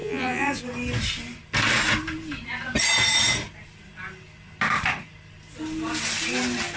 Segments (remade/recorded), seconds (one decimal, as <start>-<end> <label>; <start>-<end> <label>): 0.0-0.6 remade; 0.6-6.8 recorded